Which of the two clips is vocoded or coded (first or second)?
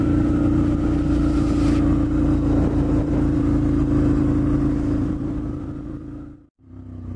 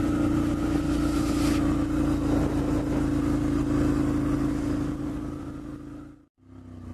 first